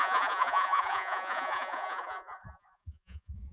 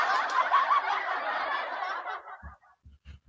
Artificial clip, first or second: first